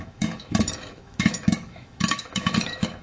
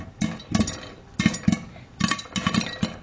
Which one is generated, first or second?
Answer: first